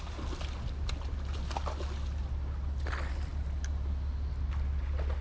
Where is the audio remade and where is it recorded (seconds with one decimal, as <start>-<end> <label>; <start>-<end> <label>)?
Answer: 0.0-5.2 recorded

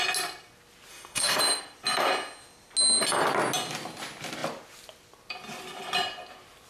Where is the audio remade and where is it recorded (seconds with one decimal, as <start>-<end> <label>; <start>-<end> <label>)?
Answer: 0.0-0.9 recorded; 0.9-1.4 remade; 1.4-6.7 recorded